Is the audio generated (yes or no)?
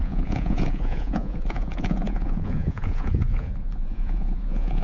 yes